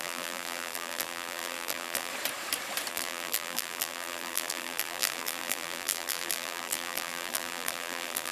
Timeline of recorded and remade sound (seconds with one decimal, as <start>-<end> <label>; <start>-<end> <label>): 0.0-2.1 remade; 2.1-2.9 recorded; 2.9-8.3 remade